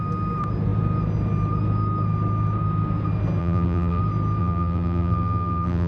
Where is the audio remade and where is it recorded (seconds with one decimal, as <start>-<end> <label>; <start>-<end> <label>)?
0.0-3.4 recorded; 3.4-4.0 remade; 4.0-4.4 recorded; 4.4-5.9 remade